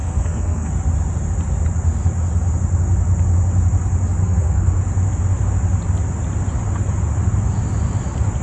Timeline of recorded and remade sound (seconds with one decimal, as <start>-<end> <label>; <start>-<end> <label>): 0.0-0.7 remade; 0.7-4.2 recorded; 4.2-4.8 remade; 4.8-8.4 recorded